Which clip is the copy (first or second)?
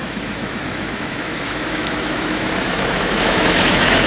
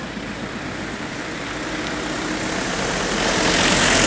first